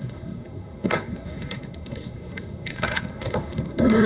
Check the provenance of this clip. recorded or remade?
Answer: remade